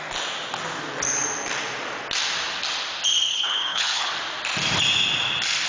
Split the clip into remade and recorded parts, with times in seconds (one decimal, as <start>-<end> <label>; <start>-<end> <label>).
0.0-3.3 recorded; 3.3-4.1 remade; 4.1-5.7 recorded